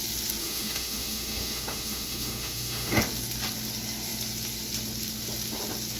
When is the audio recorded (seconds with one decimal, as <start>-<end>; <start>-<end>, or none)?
0.0-0.4; 3.0-6.0